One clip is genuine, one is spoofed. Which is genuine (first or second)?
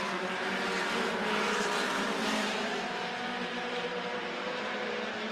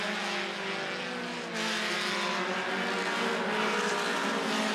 second